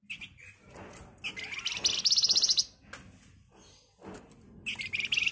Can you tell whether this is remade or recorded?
recorded